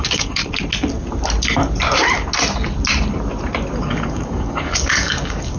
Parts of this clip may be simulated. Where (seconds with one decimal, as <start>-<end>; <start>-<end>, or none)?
0.0-0.4; 3.8-5.6